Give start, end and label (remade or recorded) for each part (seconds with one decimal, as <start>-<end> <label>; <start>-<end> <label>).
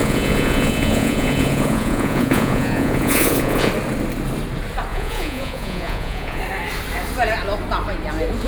0.0-3.7 remade; 3.7-4.9 recorded; 4.9-6.4 remade; 6.4-8.5 recorded